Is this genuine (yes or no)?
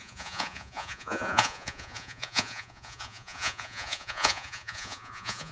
no